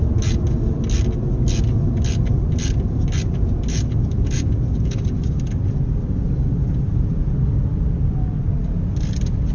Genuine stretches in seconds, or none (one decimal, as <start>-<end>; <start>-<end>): 0.0-9.5